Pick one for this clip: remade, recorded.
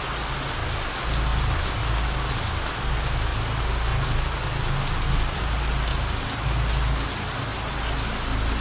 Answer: recorded